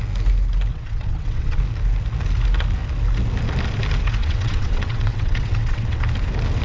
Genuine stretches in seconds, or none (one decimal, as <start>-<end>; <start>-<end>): 0.0-0.7; 1.6-4.2; 6.0-6.6